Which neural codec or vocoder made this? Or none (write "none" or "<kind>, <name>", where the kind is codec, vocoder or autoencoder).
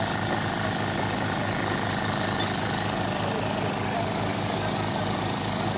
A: none